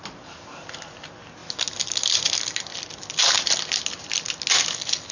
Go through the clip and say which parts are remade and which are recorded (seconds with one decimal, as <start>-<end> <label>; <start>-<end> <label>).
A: 0.0-5.1 recorded